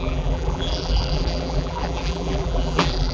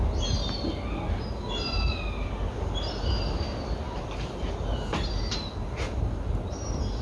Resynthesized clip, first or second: first